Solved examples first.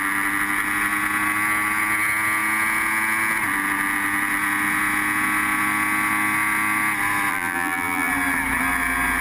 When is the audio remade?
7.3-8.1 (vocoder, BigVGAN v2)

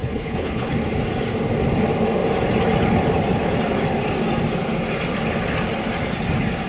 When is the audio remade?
0.0-0.7 (codec, HILCodec)

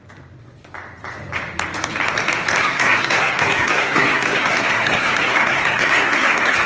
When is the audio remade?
2.6-6.7 (codec, SNAC)

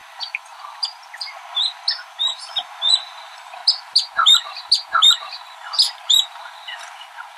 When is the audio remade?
2.3-3.6 (vocoder, BigVGAN v2)

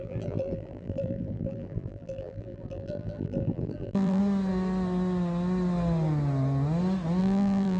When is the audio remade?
0.0-4.2 (vocoder, BigVGAN v2); 7.2-7.8

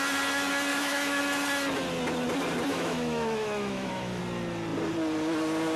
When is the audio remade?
0.7-1.2 (autoencoder, DAC-VAE); 2.7-4.2

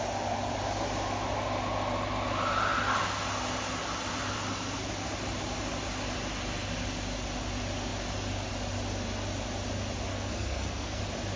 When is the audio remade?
10.1-11.0 (codec, SNAC)